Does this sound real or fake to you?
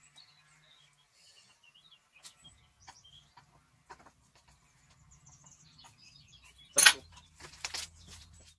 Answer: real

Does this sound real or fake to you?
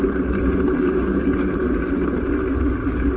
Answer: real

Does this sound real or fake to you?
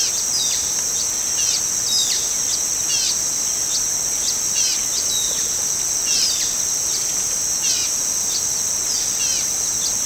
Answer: real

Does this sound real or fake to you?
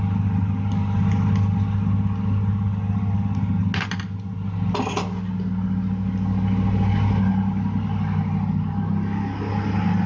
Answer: real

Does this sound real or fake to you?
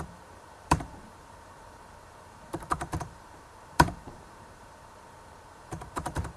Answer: fake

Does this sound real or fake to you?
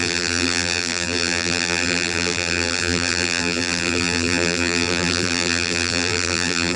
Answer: fake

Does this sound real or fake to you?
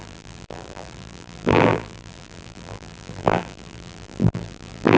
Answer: fake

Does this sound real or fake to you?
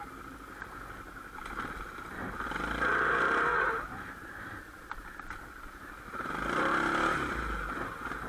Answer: real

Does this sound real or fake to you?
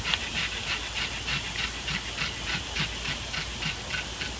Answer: real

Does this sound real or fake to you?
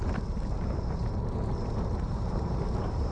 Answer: fake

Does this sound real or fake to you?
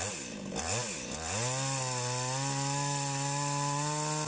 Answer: real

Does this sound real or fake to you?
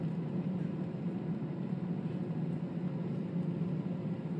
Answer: real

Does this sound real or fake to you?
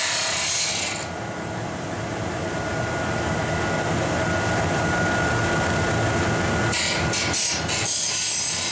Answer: real